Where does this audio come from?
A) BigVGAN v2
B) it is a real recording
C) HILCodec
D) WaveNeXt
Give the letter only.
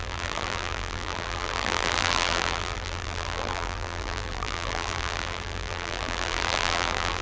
A